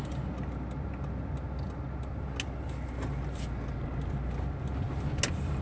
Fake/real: real